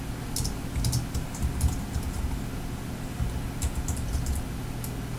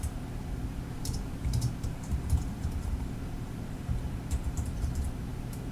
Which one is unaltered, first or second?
first